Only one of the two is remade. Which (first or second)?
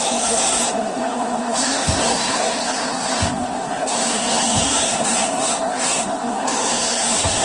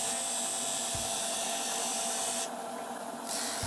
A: first